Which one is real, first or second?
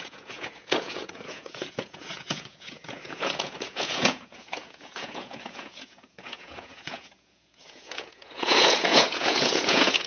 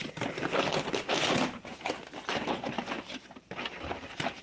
second